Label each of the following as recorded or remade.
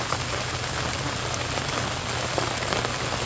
recorded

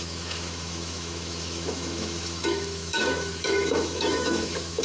remade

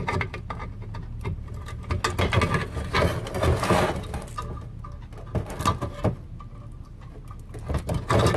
recorded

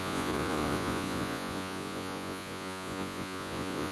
remade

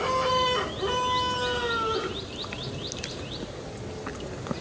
recorded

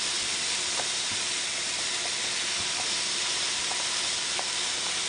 recorded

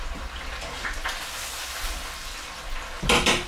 recorded